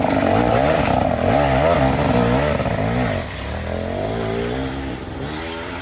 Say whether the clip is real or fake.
real